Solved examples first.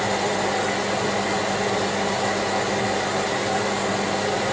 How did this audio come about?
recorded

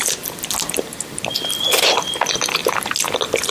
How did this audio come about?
recorded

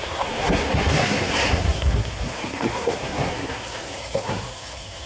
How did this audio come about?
remade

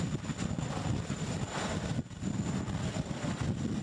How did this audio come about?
recorded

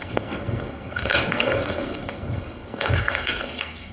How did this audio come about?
remade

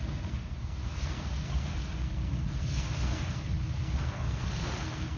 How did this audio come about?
remade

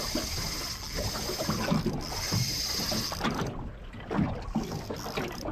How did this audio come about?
recorded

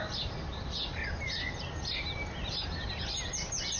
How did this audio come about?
recorded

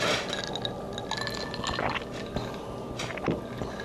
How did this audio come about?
recorded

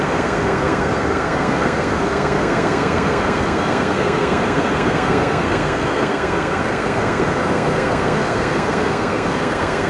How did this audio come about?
remade